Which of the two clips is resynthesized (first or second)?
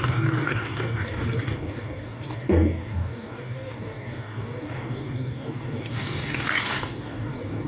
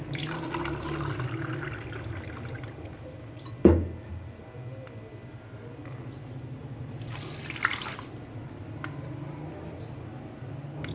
first